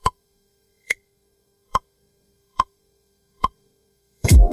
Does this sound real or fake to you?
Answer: fake